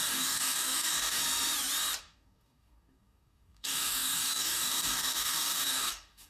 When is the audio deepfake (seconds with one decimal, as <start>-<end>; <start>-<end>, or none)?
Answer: 0.0-1.2; 2.0-6.3